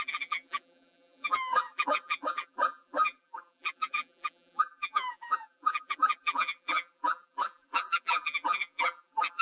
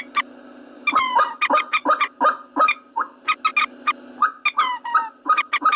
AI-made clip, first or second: first